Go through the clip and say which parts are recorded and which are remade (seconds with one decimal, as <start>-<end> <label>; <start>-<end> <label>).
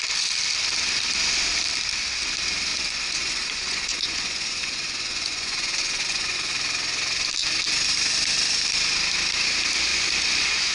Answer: 0.0-2.7 recorded; 2.7-6.5 remade; 6.5-9.9 recorded; 9.9-10.7 remade